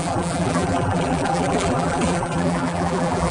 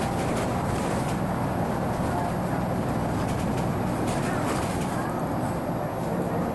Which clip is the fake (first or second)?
first